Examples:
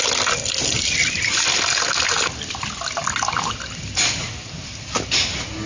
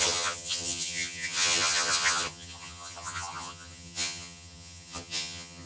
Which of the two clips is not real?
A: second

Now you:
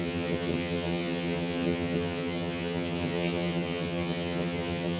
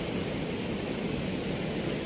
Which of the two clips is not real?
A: first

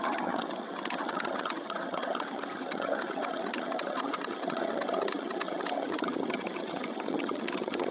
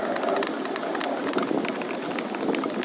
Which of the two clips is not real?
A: first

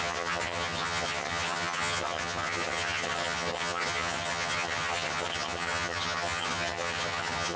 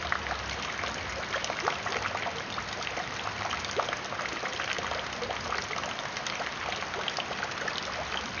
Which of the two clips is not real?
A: first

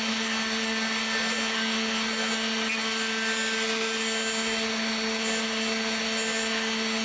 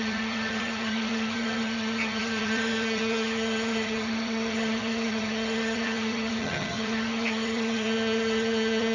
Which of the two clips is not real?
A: second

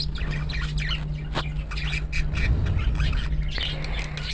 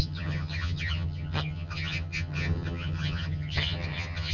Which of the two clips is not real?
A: second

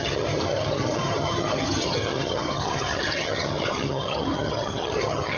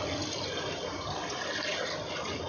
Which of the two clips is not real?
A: first